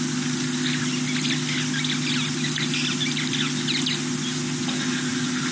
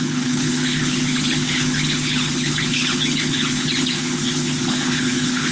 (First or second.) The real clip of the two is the first